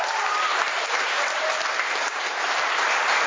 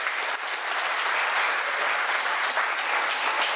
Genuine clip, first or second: second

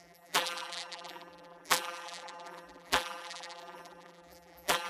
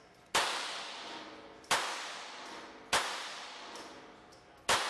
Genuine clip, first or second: second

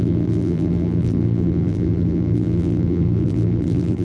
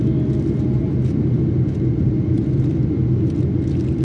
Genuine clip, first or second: second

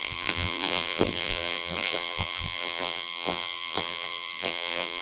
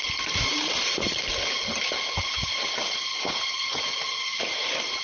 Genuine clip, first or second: second